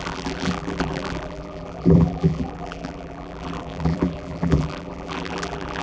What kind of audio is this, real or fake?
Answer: fake